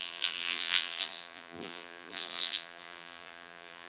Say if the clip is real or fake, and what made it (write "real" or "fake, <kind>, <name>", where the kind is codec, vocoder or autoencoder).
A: fake, vocoder, BigVGAN v2